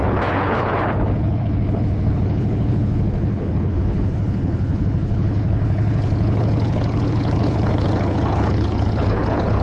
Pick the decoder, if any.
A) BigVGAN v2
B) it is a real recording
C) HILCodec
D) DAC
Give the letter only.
C